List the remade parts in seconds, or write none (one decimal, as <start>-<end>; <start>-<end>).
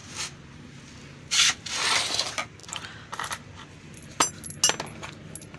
2.6-4.3